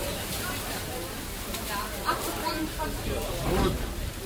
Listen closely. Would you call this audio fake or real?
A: real